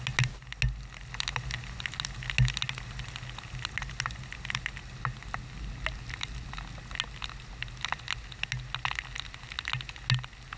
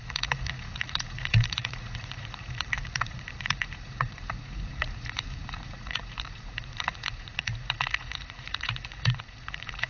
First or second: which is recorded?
first